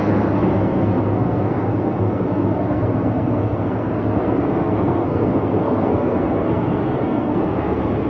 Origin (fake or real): fake